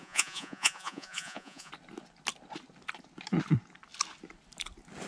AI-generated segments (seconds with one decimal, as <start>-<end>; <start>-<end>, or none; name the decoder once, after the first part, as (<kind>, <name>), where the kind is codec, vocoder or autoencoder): 0.0-1.7 (vocoder, Vocos)